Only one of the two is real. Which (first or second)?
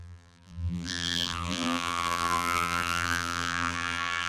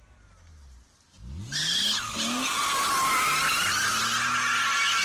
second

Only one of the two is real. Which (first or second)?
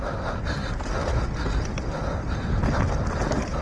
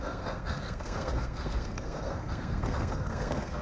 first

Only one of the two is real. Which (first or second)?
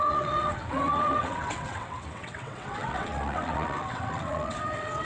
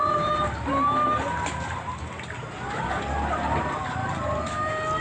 second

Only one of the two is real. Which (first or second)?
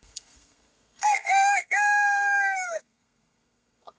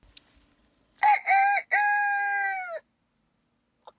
second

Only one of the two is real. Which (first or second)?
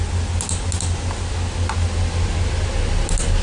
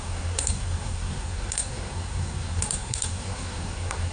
first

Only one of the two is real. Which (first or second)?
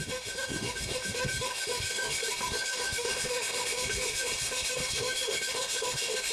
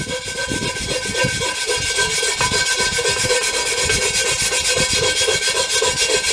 second